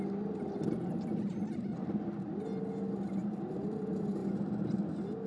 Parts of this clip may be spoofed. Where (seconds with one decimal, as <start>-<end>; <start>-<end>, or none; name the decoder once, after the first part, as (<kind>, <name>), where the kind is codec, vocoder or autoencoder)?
none